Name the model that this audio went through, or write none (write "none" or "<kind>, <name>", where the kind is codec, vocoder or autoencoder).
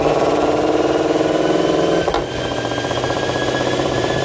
vocoder, BigVGAN v2